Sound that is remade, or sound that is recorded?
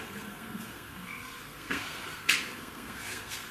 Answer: remade